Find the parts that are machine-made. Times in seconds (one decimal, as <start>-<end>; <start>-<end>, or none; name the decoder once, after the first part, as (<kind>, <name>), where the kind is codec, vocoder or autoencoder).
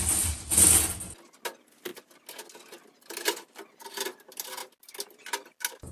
none